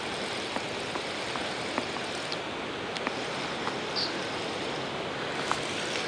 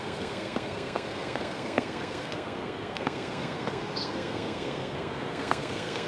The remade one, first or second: second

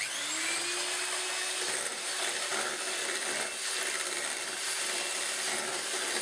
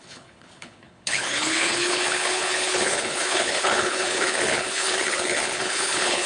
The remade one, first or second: second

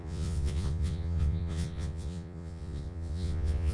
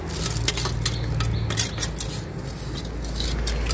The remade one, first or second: first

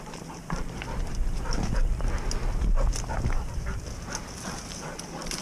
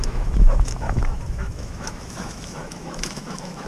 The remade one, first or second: second